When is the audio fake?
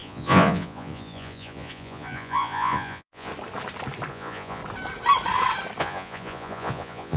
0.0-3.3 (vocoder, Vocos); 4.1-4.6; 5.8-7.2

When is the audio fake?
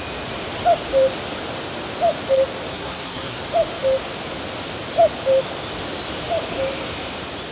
2.7-3.4 (codec, SNAC)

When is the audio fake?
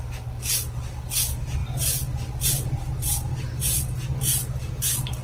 none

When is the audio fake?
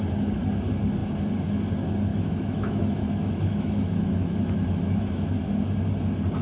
2.1-5.5 (autoencoder, DAC-VAE)